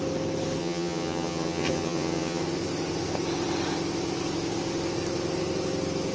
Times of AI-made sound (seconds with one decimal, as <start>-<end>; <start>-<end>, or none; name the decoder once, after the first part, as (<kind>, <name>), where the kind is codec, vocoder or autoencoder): 0.6-2.4 (vocoder, HiFi-GAN)